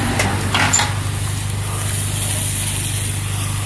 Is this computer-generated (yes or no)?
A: no